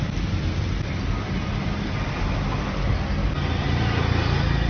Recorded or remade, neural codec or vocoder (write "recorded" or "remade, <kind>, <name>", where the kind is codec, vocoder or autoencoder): recorded